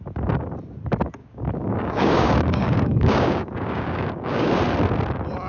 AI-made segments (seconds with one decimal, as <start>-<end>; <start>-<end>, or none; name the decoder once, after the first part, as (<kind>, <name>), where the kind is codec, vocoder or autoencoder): 1.2-4.5 (codec, DAC)